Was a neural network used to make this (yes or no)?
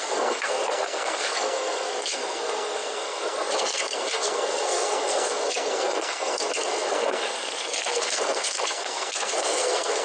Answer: yes